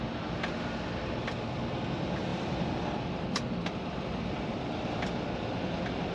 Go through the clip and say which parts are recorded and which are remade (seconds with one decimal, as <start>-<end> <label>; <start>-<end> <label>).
0.0-2.3 recorded; 2.3-6.1 remade